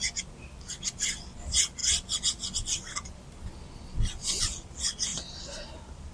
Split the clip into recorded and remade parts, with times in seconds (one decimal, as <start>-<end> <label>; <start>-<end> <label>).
0.0-5.1 recorded; 5.1-6.1 remade